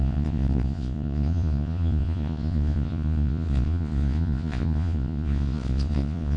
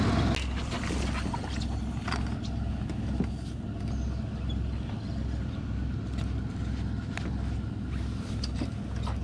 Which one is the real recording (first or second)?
second